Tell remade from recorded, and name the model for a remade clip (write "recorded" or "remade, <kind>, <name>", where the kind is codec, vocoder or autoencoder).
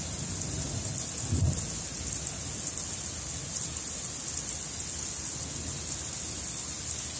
recorded